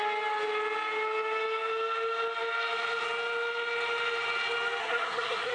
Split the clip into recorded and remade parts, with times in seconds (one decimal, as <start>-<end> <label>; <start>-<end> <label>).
0.0-4.8 recorded; 4.8-5.5 remade